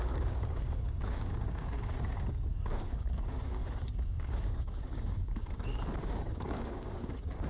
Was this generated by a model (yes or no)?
yes